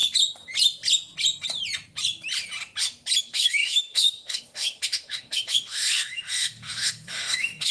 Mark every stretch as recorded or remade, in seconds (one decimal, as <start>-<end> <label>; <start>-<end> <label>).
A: 0.0-3.2 recorded; 3.2-7.7 remade